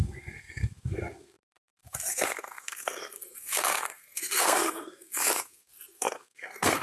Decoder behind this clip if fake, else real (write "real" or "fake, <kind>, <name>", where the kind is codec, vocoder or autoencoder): fake, codec, SNAC